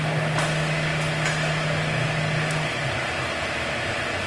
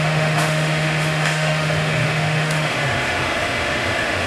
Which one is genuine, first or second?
first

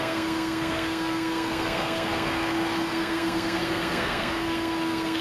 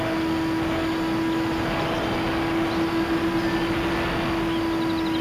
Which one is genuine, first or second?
second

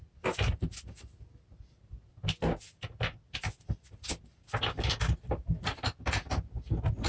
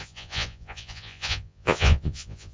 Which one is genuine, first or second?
first